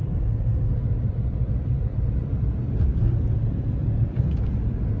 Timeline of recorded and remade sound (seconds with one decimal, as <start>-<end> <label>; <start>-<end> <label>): 0.0-5.0 remade